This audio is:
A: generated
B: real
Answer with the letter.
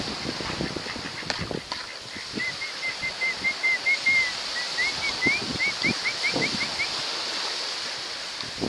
B